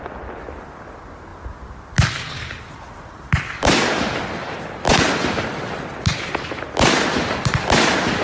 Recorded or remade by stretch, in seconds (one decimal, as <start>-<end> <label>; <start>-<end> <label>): 0.0-8.2 recorded